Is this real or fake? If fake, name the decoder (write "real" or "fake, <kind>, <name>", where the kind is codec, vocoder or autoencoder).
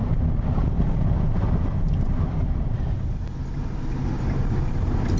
fake, vocoder, BigVGAN v2